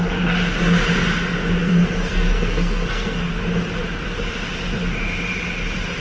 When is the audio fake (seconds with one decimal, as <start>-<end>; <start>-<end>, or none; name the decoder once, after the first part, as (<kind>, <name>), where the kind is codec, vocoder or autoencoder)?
1.6-3.3 (codec, SNAC)